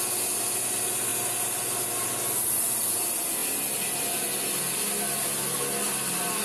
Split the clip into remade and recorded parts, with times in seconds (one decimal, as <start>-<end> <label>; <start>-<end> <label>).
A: 0.0-6.4 recorded